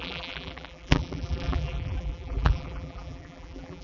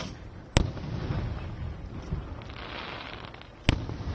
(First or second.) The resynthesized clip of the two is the first